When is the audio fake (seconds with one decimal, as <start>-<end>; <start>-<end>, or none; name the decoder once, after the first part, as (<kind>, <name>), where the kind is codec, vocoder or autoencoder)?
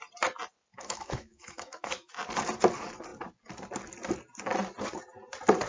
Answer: 0.7-2.1 (autoencoder, DAC-VAE)